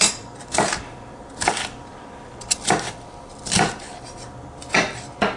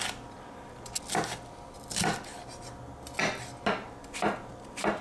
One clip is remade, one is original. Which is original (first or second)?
second